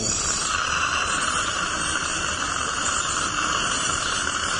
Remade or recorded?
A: remade